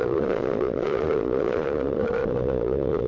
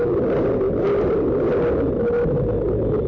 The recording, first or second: second